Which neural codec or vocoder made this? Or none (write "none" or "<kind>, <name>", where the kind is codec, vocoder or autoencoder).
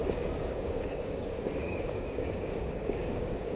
codec, DAC